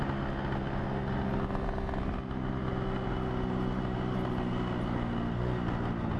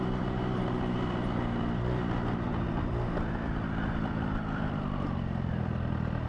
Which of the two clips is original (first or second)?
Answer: first